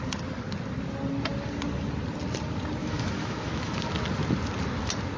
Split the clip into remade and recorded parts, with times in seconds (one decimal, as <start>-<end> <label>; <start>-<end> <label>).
0.0-2.8 recorded; 2.8-3.8 remade; 3.8-5.2 recorded